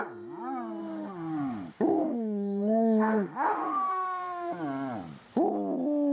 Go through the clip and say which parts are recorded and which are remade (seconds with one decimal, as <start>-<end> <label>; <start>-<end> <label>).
0.0-0.8 recorded; 0.8-4.5 remade; 4.5-6.1 recorded